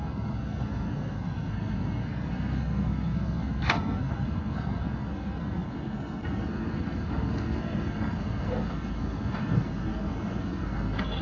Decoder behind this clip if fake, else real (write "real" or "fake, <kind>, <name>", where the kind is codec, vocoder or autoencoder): fake, codec, SNAC